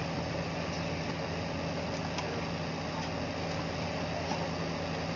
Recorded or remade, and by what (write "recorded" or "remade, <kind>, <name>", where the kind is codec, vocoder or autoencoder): recorded